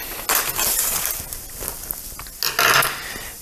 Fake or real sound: real